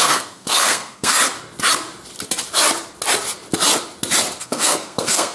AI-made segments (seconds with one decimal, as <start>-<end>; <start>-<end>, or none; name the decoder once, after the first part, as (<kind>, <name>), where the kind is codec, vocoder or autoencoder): 0.0-1.2 (codec, SNAC); 4.4-5.3